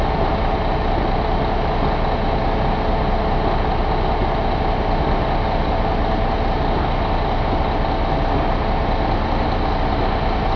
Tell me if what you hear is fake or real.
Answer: real